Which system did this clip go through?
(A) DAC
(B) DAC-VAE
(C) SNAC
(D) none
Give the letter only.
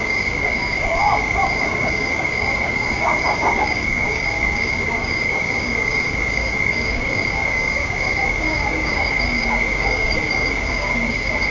A